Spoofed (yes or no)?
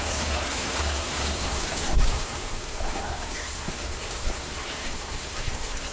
yes